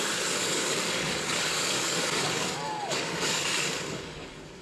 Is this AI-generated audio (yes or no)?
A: yes